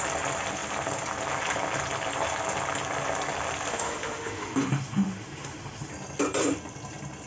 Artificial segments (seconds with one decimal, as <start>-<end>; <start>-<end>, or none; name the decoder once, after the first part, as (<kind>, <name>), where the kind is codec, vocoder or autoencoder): 3.7-5.9 (autoencoder, DAC-VAE)